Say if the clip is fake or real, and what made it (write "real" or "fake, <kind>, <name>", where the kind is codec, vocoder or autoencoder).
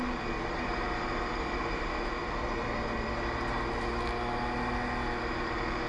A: real